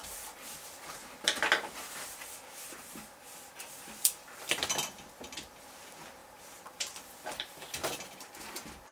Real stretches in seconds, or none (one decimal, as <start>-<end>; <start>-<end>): 4.3-6.2; 8.5-8.9